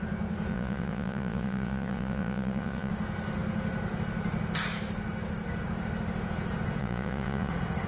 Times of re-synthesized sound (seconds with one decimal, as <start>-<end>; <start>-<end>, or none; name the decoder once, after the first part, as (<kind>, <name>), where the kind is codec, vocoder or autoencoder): 0.5-2.9 (vocoder, Vocos); 6.8-7.5